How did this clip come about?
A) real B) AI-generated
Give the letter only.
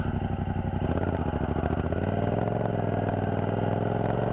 A